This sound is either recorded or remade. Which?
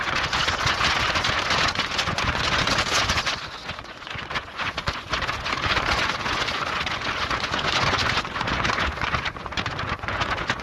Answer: remade